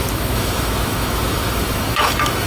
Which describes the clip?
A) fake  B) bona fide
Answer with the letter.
A